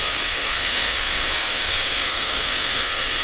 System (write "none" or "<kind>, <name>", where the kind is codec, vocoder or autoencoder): codec, SNAC